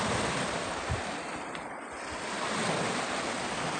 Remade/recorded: recorded